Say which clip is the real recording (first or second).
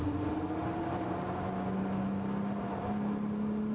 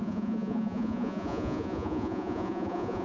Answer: first